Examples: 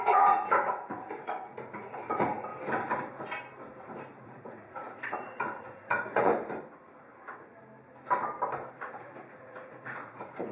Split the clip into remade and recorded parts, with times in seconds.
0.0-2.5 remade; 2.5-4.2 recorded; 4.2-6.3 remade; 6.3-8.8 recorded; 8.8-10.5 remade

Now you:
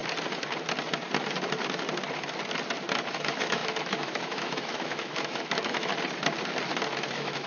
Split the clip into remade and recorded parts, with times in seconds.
0.0-3.1 recorded; 3.1-5.9 remade; 5.9-7.1 recorded; 7.1-7.5 remade

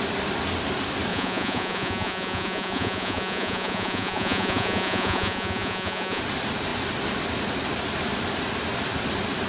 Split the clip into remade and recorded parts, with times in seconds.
0.0-1.1 recorded; 1.1-6.2 remade; 6.2-9.5 recorded

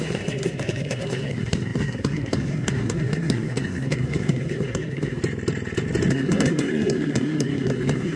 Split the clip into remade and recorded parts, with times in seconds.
0.0-5.2 remade; 5.2-6.1 recorded; 6.1-8.2 remade

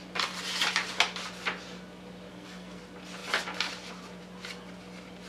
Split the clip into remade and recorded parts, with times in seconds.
0.0-2.3 recorded; 2.3-2.8 remade; 2.8-5.3 recorded